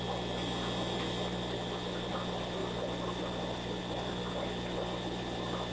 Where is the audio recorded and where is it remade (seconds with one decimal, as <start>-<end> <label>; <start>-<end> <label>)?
0.0-5.7 recorded